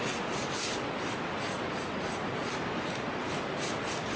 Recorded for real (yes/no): yes